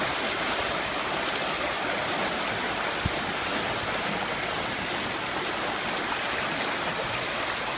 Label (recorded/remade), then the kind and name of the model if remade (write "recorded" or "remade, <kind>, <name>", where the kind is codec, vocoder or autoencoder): recorded